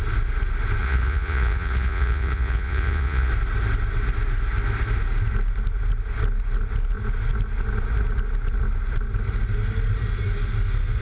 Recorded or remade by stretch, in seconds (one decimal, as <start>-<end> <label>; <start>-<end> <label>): 0.0-0.8 recorded; 0.8-3.3 remade; 3.3-11.0 recorded